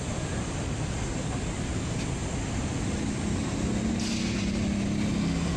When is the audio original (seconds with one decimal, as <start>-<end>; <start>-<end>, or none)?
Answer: 0.0-5.6